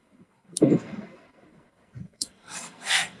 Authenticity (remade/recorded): remade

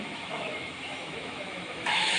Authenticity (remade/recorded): remade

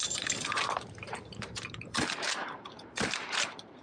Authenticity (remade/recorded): remade